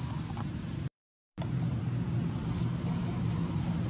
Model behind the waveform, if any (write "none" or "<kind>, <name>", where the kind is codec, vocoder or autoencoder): vocoder, BigVGAN v2